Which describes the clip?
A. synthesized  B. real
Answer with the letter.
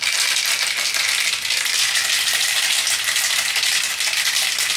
B